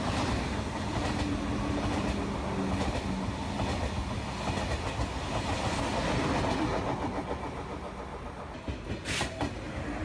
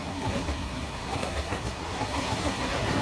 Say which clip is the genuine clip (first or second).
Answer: first